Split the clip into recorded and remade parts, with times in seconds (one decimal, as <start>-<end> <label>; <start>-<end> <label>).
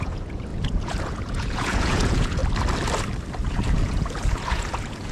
0.0-2.4 remade; 2.4-3.5 recorded; 3.5-5.1 remade